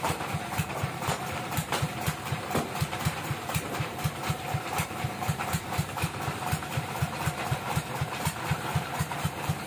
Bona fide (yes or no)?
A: no